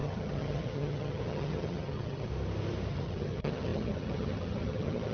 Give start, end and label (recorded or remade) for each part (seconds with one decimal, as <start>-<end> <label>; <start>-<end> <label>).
0.0-2.3 remade; 2.3-2.9 recorded; 2.9-5.1 remade